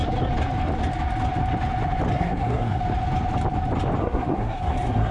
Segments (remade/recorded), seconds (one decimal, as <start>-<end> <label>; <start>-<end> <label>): 0.0-2.1 recorded; 2.1-2.8 remade; 2.8-4.0 recorded; 4.0-5.1 remade